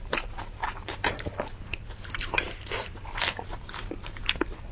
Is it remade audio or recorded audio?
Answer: remade